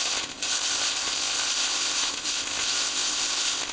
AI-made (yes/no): yes